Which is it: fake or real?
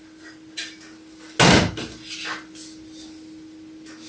real